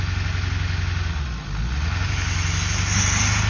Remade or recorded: recorded